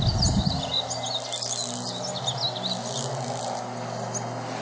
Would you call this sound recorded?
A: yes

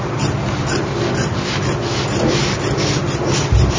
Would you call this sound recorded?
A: yes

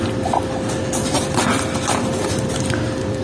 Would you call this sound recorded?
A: yes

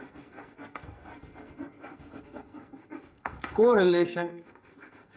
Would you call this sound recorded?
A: no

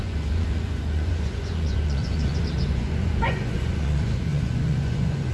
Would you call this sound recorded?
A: no